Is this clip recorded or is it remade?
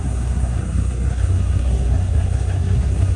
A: remade